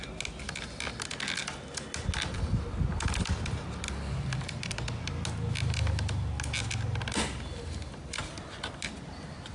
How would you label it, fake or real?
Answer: real